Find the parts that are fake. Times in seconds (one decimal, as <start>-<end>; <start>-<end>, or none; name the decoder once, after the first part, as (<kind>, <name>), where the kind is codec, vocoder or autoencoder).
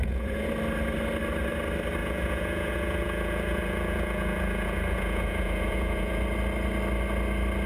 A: 0.0-0.5 (vocoder, Vocos); 2.0-6.2